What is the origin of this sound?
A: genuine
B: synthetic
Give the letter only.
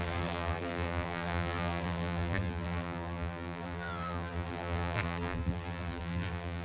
B